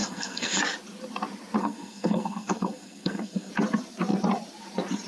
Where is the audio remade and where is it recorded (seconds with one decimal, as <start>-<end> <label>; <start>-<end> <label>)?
0.0-0.6 remade; 0.6-1.6 recorded; 1.6-3.5 remade; 3.5-5.1 recorded